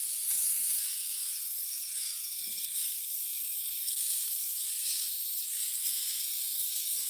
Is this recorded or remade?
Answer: remade